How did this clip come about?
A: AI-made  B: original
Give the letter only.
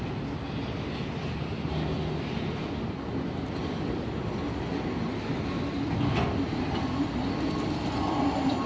B